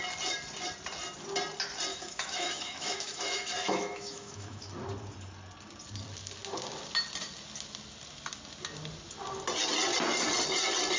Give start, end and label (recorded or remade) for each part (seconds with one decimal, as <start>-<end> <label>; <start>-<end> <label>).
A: 0.0-1.9 recorded; 1.9-4.7 remade; 4.7-11.0 recorded